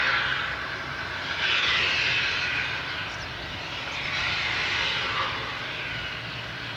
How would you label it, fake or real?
real